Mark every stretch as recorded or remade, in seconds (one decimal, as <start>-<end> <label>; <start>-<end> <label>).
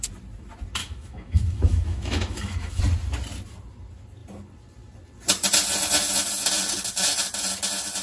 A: 0.0-0.8 recorded; 0.8-2.8 remade; 2.8-8.0 recorded